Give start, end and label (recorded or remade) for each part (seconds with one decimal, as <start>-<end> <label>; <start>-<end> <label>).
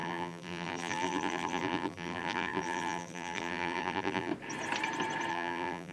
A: 0.0-4.3 remade; 4.3-5.3 recorded; 5.3-5.9 remade